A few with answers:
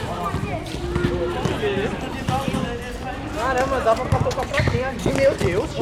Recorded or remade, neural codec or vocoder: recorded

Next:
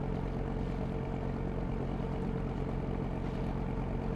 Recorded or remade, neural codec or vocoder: recorded